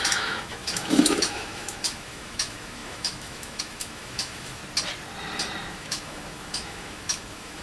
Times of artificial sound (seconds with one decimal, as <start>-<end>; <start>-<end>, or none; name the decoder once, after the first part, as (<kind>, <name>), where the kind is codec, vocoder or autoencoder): 0.0-4.6 (autoencoder, DAC-VAE); 5.7-7.6